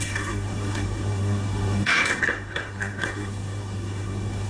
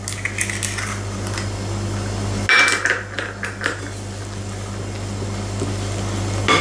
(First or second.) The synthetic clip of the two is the first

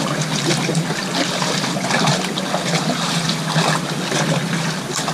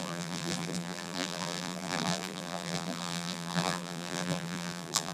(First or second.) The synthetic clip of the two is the second